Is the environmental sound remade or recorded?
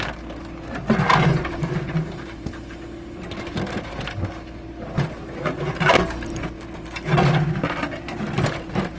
recorded